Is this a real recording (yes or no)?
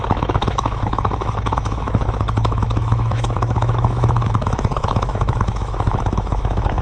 no